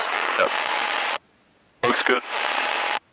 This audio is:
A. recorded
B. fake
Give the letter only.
B